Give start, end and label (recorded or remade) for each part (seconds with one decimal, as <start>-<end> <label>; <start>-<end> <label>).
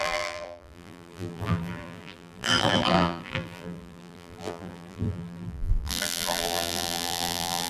0.0-7.7 remade